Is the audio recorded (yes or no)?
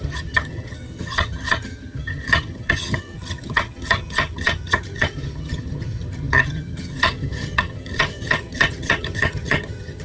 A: no